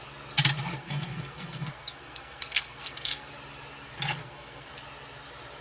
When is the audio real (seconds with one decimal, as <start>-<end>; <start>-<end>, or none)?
0.0-0.7; 3.3-4.2; 4.7-5.6